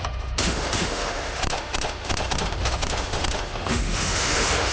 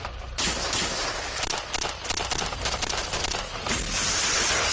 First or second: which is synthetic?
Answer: first